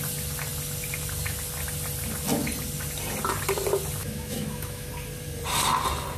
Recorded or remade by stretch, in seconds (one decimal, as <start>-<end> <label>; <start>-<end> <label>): 0.0-4.0 recorded; 4.0-4.9 remade; 4.9-6.2 recorded